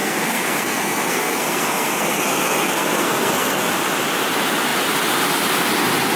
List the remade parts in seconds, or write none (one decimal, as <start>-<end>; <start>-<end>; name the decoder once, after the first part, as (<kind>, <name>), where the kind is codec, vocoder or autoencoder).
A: 0.0-3.7 (codec, SNAC)